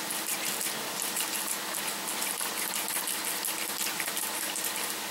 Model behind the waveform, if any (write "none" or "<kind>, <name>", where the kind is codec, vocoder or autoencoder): none